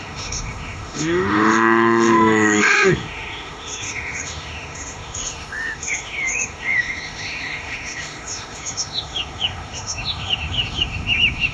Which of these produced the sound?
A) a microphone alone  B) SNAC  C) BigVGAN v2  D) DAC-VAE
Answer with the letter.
D